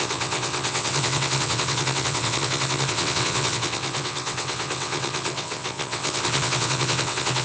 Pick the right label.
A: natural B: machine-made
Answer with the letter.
B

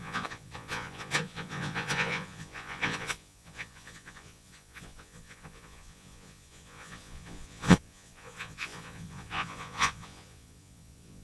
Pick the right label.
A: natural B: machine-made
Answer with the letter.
B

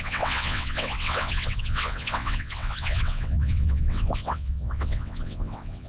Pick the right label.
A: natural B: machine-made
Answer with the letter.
B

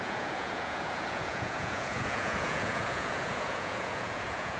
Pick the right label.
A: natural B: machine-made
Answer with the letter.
B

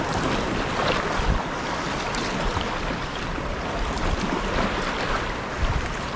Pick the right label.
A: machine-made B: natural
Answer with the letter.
B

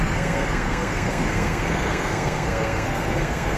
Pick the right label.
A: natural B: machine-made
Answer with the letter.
B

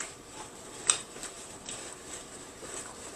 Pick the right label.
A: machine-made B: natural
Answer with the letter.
A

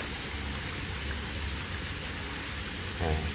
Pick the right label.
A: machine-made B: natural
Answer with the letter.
B